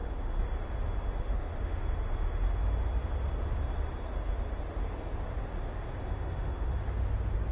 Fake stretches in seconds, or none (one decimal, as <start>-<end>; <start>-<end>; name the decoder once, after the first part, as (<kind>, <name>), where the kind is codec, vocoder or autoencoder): 1.2-1.8 (autoencoder, DAC-VAE); 6.0-6.8